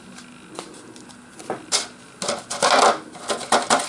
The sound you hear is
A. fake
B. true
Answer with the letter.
B